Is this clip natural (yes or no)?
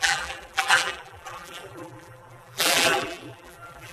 no